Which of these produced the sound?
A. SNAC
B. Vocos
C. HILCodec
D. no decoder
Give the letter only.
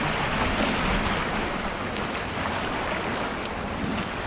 D